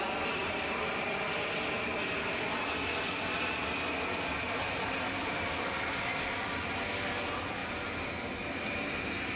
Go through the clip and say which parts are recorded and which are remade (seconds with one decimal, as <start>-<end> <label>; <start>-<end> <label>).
0.0-9.4 recorded